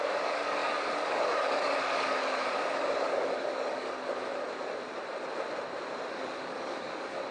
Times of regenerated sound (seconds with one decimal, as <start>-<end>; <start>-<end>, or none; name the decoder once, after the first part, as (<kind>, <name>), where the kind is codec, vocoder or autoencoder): 0.0-4.3 (codec, DAC); 6.1-7.3